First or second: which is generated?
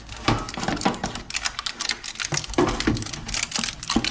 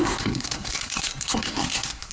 second